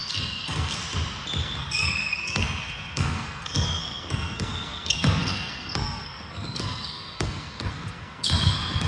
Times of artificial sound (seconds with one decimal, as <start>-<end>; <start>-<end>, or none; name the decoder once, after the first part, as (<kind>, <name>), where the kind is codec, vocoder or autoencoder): 0.0-0.8 (codec, SNAC); 1.4-8.9